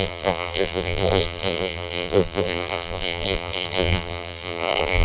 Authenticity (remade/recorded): remade